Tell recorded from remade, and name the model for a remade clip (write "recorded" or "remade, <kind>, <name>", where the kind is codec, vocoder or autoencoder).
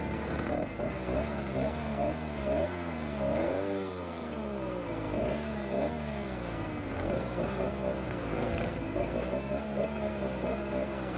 remade, codec, SNAC